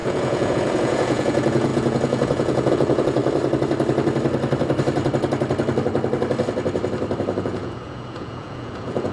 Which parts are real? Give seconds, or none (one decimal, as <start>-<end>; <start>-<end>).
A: 3.2-7.4